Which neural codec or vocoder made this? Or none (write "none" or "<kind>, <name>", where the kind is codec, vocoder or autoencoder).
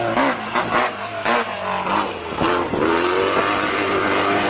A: none